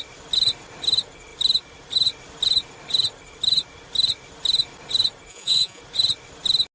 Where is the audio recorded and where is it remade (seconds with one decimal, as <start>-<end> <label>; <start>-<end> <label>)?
0.0-5.3 recorded; 5.3-5.8 remade; 5.8-6.7 recorded